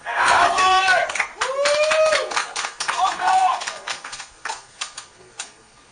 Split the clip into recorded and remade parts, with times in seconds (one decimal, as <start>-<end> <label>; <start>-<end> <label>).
0.0-1.3 remade; 1.3-2.1 recorded; 2.1-5.9 remade